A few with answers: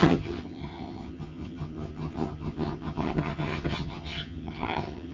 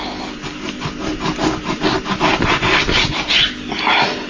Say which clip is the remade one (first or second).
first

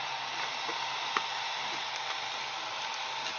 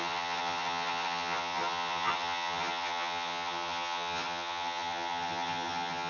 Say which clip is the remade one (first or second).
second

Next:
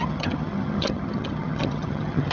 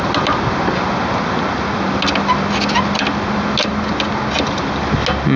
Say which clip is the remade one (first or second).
first